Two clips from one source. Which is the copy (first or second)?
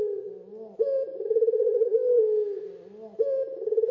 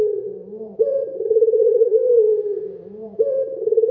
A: second